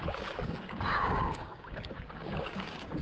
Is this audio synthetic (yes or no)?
yes